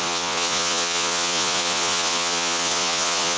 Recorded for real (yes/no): no